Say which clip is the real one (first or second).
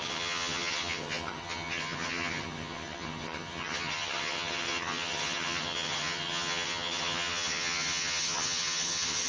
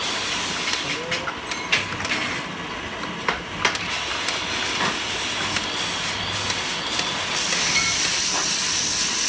second